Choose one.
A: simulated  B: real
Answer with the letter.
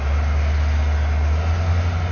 B